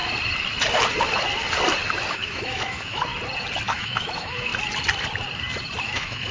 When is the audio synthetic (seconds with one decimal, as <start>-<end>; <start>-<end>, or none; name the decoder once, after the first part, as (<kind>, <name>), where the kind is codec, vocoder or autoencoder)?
2.1-3.1 (autoencoder, DAC-VAE); 3.7-4.5; 5.8-6.3